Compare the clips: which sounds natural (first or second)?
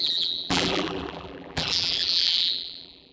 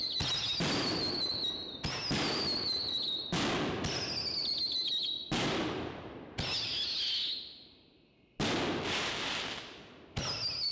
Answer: second